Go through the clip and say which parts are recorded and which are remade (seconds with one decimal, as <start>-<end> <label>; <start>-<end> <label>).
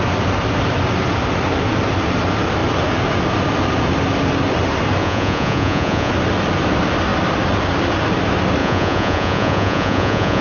0.0-5.0 recorded; 5.0-6.1 remade; 6.1-8.6 recorded; 8.6-10.4 remade